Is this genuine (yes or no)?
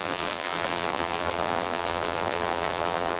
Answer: no